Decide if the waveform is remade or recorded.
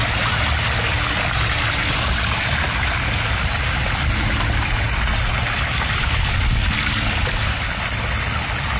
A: recorded